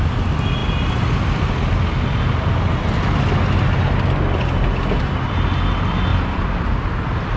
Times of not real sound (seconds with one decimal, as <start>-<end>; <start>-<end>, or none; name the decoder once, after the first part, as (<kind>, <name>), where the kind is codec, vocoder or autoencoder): 6.1-6.8 (vocoder, BigVGAN v2)